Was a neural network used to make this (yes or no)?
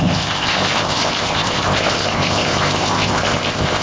yes